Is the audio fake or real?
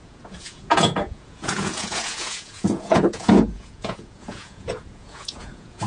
fake